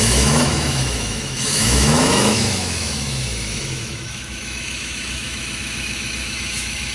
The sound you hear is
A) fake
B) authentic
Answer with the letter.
A